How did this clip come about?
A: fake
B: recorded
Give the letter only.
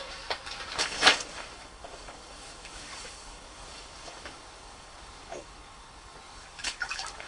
A